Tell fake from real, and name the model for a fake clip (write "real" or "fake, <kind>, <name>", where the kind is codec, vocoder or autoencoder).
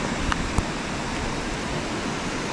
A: real